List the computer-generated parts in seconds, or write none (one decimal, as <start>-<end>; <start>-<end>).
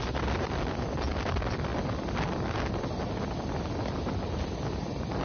none